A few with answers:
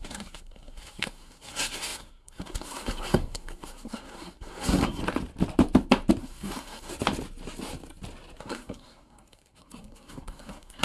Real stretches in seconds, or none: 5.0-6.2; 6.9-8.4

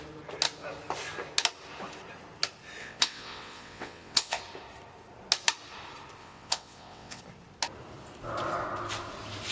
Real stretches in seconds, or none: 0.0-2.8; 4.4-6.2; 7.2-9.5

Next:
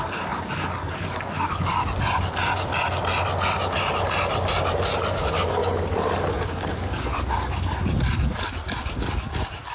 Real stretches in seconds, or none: 1.8-5.1; 5.6-6.3

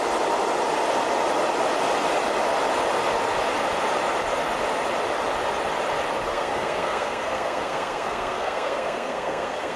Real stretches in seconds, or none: 0.0-6.3

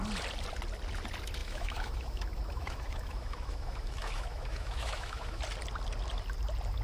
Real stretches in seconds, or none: 0.0-1.4; 5.4-6.8